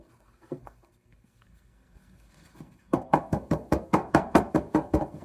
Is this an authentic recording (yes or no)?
no